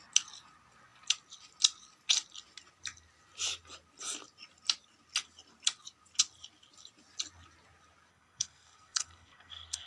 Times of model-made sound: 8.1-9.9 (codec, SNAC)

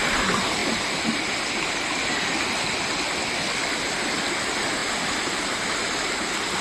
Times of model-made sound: none

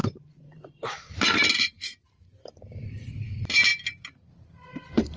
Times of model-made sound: 0.0-5.2 (vocoder, BigVGAN v2)